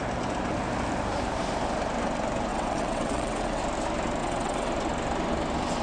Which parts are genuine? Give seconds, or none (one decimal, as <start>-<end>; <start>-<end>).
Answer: 0.0-2.5; 3.6-4.2; 4.7-5.8